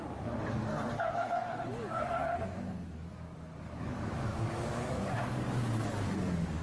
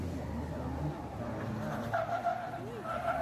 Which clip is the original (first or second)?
second